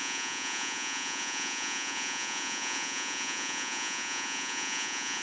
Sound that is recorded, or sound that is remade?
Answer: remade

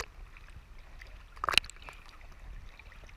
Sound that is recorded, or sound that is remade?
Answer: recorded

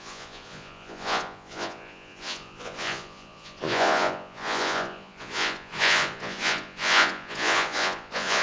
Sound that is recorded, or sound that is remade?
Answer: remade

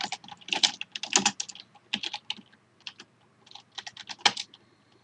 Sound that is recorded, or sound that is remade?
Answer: recorded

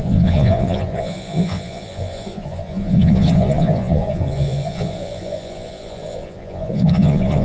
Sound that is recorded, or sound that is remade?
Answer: remade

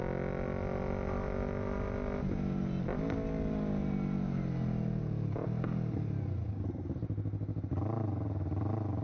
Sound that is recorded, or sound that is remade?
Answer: recorded